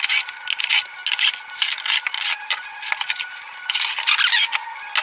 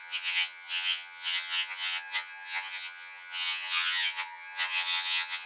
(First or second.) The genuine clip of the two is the first